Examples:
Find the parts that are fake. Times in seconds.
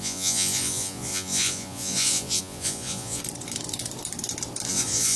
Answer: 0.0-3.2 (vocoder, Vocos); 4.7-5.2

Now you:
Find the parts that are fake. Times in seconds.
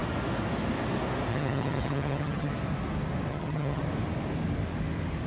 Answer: 1.3-2.5 (vocoder, HiFi-GAN); 3.3-3.8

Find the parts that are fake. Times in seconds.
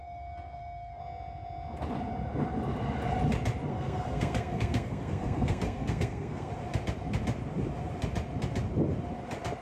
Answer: 0.0-1.0 (codec, SNAC); 3.7-6.5